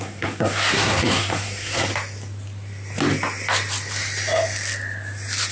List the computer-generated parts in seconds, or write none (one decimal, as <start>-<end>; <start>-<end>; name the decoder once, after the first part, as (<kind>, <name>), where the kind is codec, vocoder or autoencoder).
0.0-1.9 (codec, SNAC)